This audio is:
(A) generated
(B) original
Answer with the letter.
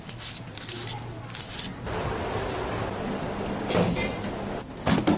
B